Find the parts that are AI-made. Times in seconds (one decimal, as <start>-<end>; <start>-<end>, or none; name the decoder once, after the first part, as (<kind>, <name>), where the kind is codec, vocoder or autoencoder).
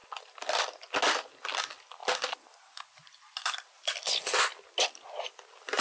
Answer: 2.0-4.0 (vocoder, BigVGAN v2)